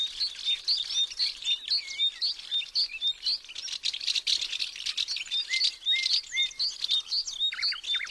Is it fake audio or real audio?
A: real